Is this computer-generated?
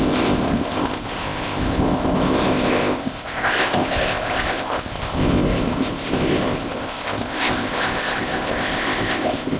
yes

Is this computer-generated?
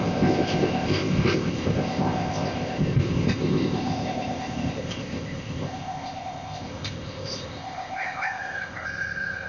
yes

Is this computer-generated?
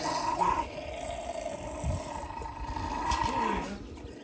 no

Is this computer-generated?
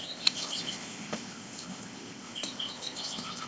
yes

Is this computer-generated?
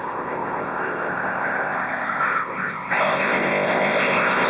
yes